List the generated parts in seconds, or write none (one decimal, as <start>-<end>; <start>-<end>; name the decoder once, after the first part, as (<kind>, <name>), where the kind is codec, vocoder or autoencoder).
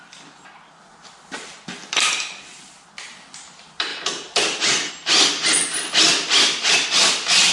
none